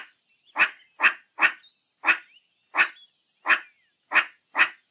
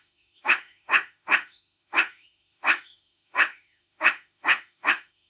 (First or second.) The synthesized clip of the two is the second